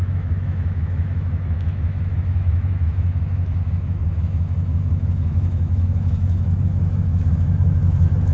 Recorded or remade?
remade